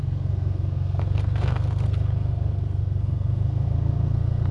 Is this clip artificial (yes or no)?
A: yes